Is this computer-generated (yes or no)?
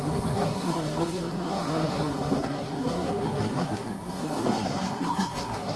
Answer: yes